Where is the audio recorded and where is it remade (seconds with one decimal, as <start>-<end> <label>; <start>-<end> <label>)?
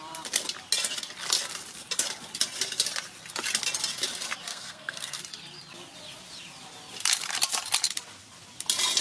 0.0-4.5 recorded; 4.5-5.2 remade; 5.2-9.0 recorded